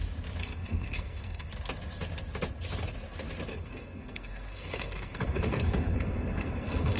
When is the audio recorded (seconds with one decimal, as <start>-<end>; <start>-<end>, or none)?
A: 0.0-0.4; 1.5-3.5